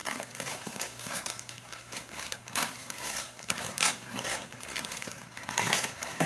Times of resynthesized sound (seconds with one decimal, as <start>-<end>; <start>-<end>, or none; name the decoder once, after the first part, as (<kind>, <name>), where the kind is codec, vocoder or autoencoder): 0.0-6.3 (codec, SNAC)